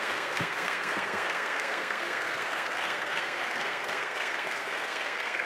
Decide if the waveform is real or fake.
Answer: fake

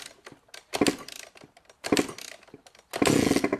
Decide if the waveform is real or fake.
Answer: real